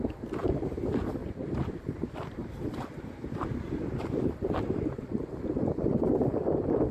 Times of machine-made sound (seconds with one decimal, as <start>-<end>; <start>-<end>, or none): 1.2-5.3